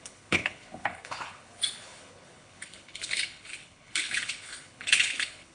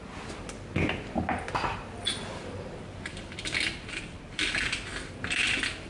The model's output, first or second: first